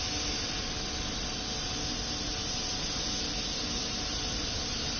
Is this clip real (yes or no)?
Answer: yes